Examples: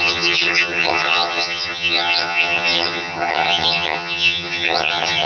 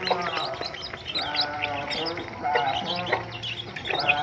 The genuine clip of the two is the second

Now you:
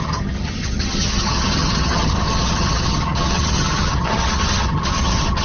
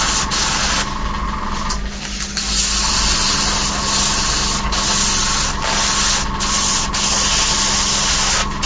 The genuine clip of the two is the second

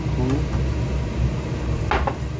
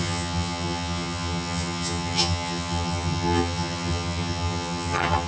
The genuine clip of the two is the first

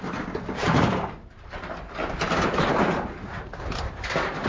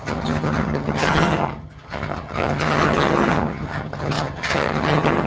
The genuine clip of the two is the first